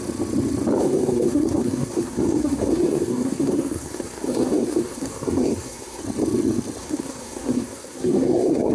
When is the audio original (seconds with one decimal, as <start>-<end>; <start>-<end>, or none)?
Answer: 0.0-0.8; 6.0-6.8